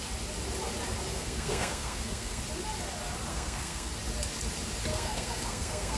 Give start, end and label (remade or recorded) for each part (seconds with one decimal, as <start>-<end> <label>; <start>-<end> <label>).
0.0-1.1 recorded; 1.1-2.4 remade; 2.4-3.3 recorded; 3.3-3.9 remade; 3.9-4.9 recorded; 4.9-6.0 remade